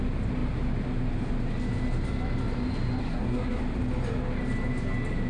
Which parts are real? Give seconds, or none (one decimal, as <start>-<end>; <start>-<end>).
0.0-3.0; 3.6-5.3